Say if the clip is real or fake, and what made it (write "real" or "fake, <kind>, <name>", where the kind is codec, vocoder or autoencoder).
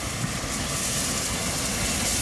real